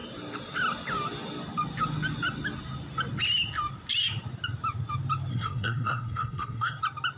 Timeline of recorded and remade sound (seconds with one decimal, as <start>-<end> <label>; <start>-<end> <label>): 0.0-5.3 recorded; 5.3-6.8 remade; 6.8-7.2 recorded